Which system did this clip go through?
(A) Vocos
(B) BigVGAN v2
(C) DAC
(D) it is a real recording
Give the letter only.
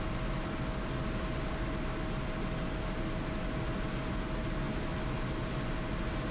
D